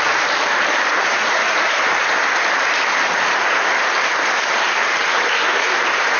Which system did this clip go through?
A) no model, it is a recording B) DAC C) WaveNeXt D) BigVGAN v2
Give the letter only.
D